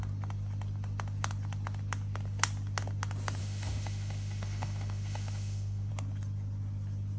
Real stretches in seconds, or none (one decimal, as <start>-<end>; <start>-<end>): 0.0-3.4; 5.9-7.2